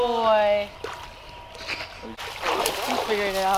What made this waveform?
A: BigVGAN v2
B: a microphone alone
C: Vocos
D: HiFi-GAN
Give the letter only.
B